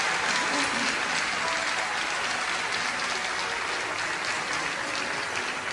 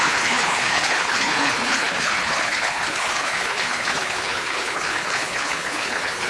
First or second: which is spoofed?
second